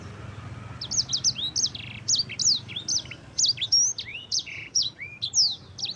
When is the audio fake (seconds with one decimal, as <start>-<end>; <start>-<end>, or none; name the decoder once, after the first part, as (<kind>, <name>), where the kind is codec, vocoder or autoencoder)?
4.1-5.2 (vocoder, Vocos)